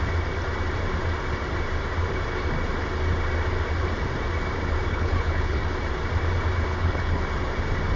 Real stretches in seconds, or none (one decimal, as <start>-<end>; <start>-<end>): 0.0-4.9; 5.6-6.7; 7.2-8.0